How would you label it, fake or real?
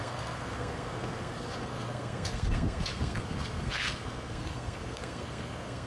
fake